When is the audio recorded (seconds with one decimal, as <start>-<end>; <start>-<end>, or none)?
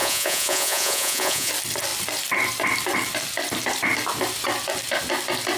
1.5-5.6